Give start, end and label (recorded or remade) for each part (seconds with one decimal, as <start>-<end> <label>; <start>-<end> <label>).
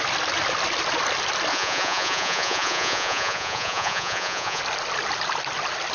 0.0-1.5 recorded; 1.5-4.6 remade; 4.6-5.9 recorded